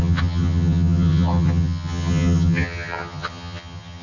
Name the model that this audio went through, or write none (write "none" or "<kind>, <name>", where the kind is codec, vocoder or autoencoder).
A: vocoder, HiFi-GAN